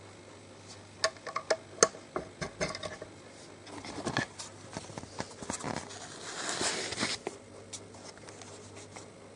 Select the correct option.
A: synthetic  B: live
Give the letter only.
B